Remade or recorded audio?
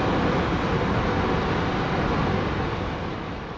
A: recorded